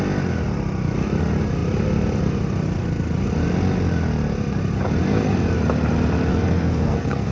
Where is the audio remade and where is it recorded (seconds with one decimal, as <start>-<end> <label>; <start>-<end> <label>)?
0.0-6.3 recorded; 6.3-7.3 remade